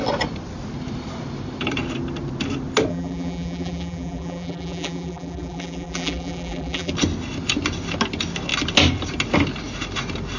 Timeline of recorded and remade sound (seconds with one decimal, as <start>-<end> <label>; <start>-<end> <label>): 0.0-2.9 recorded; 2.9-6.9 remade; 6.9-10.4 recorded